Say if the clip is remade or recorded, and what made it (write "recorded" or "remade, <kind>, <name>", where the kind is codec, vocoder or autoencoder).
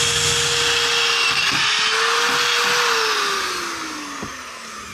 recorded